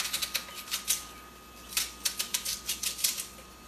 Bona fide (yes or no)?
yes